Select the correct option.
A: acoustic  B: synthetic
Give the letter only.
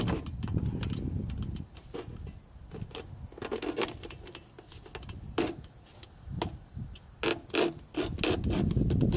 A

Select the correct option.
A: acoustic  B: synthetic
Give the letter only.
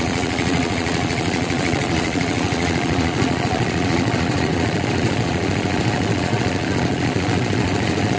B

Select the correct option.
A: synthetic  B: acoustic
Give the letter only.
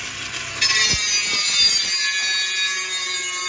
B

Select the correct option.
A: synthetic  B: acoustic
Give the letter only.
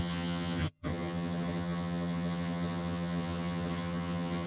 A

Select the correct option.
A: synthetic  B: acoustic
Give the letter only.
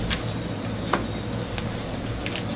B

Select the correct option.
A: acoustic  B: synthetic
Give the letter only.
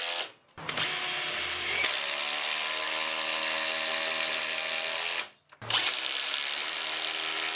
A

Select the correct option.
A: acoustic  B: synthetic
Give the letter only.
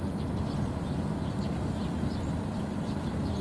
A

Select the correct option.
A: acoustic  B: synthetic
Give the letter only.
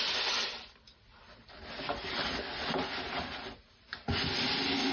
A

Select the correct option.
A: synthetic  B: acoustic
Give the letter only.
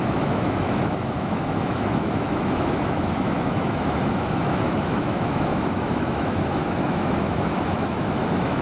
A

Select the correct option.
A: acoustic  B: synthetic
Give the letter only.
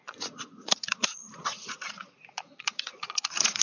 B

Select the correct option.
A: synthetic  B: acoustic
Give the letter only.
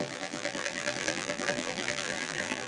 A